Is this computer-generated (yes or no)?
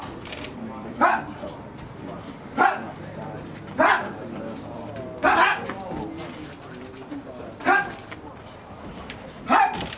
no